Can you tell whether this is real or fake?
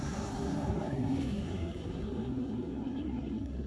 fake